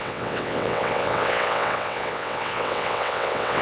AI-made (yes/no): yes